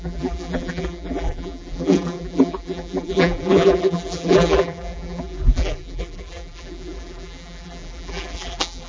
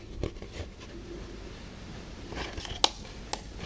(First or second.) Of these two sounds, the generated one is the first